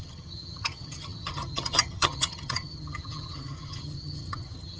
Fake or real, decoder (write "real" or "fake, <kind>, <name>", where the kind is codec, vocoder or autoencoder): fake, vocoder, HiFi-GAN